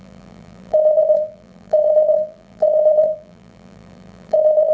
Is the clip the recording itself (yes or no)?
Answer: no